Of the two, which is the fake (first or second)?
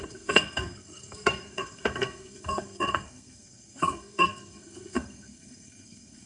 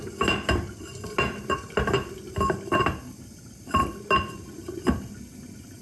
first